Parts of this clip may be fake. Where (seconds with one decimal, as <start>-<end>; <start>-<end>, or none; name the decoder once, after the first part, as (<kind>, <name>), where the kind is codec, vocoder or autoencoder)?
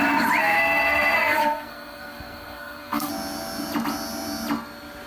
0.4-3.1 (codec, SNAC)